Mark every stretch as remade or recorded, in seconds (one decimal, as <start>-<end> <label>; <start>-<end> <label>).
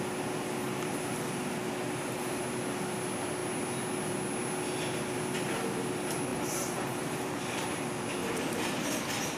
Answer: 0.0-6.3 recorded; 6.3-7.4 remade; 7.4-8.2 recorded; 8.2-9.0 remade; 9.0-9.4 recorded